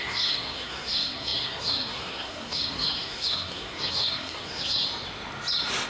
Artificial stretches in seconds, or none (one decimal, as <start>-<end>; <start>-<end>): 0.0-4.9